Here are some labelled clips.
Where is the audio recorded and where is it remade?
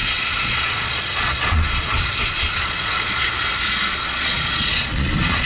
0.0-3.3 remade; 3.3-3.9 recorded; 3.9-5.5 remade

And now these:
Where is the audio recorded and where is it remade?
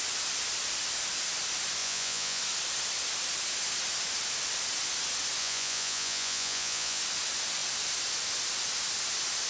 0.0-1.8 recorded; 1.8-2.4 remade; 2.4-5.4 recorded; 5.4-7.0 remade; 7.0-9.5 recorded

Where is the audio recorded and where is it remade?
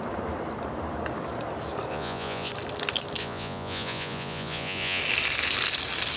0.0-1.9 recorded; 1.9-2.5 remade; 2.5-3.2 recorded; 3.2-5.0 remade; 5.0-6.2 recorded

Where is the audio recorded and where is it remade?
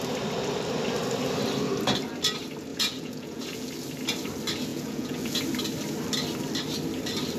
0.0-2.7 recorded; 2.7-3.7 remade; 3.7-4.7 recorded; 4.7-5.4 remade; 5.4-7.4 recorded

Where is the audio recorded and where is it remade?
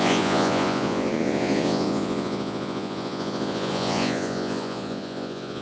0.0-5.6 remade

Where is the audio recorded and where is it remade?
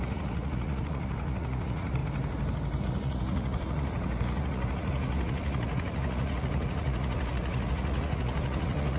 0.0-2.0 remade; 2.0-2.8 recorded; 2.8-9.0 remade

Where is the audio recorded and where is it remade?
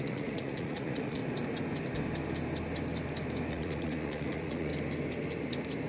0.0-1.2 remade; 1.2-3.5 recorded; 3.5-4.7 remade; 4.7-5.9 recorded